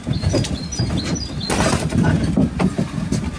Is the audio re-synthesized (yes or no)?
no